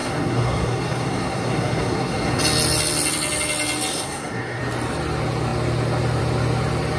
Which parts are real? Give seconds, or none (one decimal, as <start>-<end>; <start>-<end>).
2.4-3.9; 4.6-7.0